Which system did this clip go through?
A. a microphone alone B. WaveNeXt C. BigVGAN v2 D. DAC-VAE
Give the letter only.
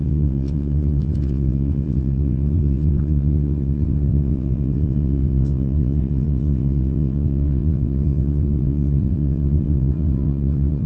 B